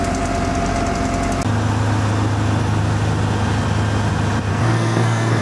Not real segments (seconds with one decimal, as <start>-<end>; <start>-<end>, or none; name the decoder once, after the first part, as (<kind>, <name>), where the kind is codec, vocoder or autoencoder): 4.5-5.4 (codec, SNAC)